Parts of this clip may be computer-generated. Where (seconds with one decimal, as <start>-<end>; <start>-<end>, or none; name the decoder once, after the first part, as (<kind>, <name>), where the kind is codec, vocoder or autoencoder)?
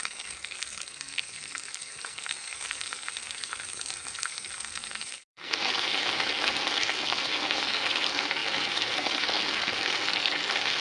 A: 0.0-10.8 (codec, SNAC)